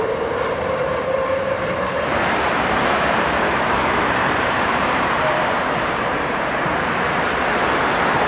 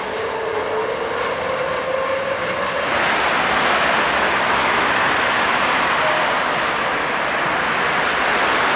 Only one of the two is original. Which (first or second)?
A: second